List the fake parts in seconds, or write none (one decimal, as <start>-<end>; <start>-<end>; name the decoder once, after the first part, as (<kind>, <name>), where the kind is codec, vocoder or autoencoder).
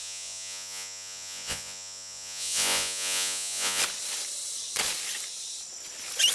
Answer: 0.0-3.8 (vocoder, Vocos)